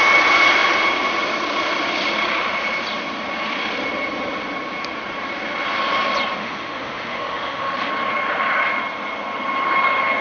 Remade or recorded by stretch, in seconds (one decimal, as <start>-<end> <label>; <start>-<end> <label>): 0.0-6.4 recorded; 6.4-7.9 remade; 7.9-10.2 recorded